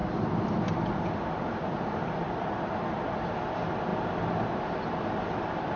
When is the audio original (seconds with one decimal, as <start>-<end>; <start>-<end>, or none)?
0.0-5.8